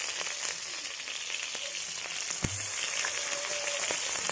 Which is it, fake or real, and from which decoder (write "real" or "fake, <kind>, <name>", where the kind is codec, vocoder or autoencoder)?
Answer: real